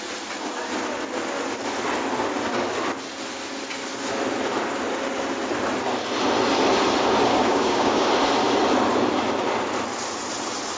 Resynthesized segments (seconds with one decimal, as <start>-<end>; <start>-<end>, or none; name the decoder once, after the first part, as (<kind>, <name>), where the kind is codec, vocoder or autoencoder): 7.3-8.1 (codec, DAC)